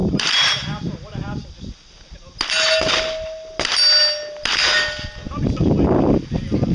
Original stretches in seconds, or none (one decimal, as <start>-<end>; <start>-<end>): 0.0-6.7